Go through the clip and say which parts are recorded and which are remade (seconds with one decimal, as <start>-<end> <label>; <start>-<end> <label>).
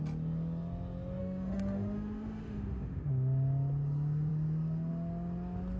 0.0-1.2 recorded; 1.2-3.1 remade; 3.1-5.8 recorded